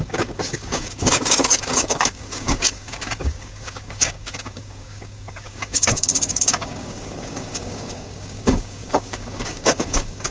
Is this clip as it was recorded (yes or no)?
no